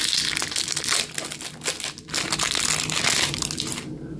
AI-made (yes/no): no